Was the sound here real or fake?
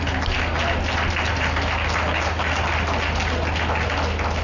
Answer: real